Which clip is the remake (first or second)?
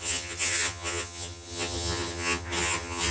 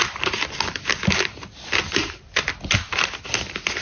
first